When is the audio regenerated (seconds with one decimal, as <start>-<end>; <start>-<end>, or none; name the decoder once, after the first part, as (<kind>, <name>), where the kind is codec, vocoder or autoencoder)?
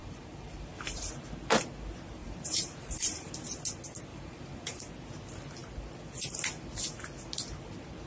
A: 0.0-1.1 (vocoder, BigVGAN v2); 2.2-3.3; 4.1-4.8